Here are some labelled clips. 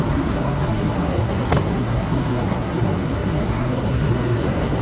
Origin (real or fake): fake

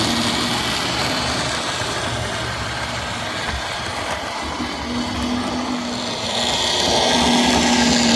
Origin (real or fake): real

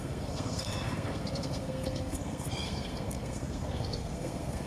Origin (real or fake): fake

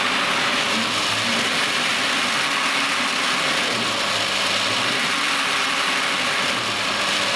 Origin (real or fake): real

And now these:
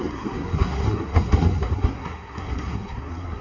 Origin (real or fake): fake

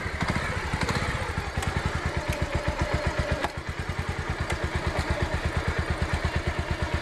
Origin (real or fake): real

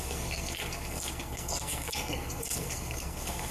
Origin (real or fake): fake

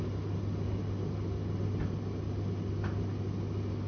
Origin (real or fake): real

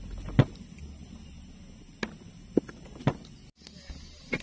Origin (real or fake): real